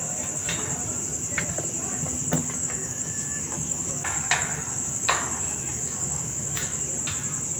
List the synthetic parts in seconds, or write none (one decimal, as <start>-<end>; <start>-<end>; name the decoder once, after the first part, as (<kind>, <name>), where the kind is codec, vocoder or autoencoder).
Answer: 2.4-6.8 (codec, DAC)